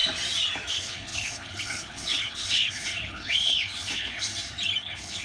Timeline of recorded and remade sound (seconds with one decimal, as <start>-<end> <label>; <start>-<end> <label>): 0.0-0.7 recorded; 0.7-4.3 remade; 4.3-4.8 recorded; 4.8-5.2 remade